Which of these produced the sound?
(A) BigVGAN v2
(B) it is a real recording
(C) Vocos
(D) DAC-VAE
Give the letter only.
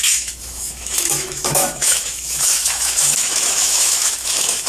D